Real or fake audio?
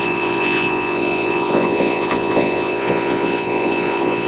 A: fake